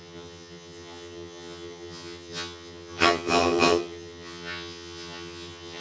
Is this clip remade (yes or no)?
yes